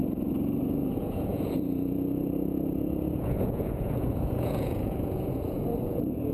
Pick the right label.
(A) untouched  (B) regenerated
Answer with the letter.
B